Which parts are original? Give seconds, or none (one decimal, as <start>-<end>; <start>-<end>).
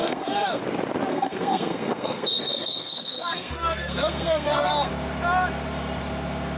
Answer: 0.6-1.1; 4.9-6.6